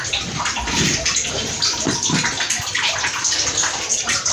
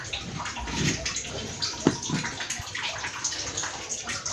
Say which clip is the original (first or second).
second